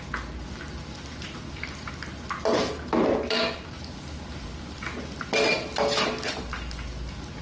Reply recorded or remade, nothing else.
recorded